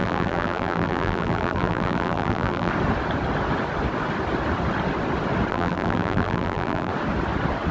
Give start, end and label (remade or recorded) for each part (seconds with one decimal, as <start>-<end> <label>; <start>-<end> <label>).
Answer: 0.0-2.7 remade; 2.7-5.5 recorded; 5.5-6.9 remade; 6.9-7.7 recorded